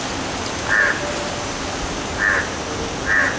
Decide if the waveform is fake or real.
real